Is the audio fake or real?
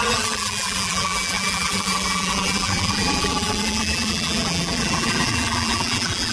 fake